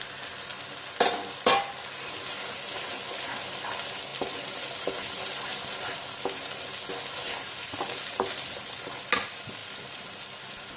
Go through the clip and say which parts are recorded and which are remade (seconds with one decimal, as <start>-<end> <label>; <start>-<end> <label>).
0.0-10.8 recorded